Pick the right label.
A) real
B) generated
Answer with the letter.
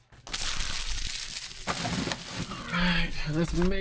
A